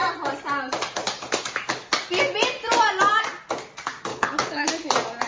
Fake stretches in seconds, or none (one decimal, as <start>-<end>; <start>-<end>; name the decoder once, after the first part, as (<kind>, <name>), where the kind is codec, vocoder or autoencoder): 4.1-4.7 (codec, HILCodec)